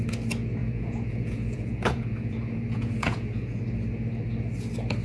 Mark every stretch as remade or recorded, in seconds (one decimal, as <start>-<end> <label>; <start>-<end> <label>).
0.0-0.6 recorded; 0.6-3.6 remade; 3.6-5.0 recorded